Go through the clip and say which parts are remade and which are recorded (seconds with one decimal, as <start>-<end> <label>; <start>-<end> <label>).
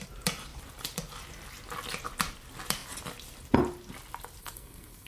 0.0-4.4 recorded; 4.4-5.1 remade